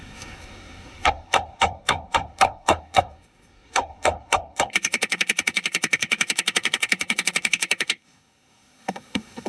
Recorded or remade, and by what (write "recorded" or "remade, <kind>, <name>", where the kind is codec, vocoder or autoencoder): remade, codec, SNAC